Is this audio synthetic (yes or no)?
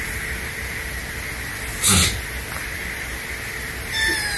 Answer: no